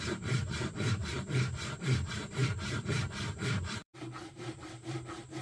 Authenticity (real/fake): fake